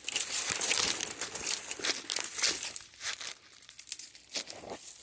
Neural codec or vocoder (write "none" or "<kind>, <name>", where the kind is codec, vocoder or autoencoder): none